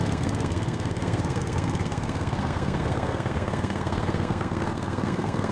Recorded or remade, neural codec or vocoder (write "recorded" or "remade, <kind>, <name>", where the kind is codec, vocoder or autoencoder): remade, codec, SNAC